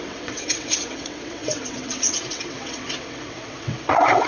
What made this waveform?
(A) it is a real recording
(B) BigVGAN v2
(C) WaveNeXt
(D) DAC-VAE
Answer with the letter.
C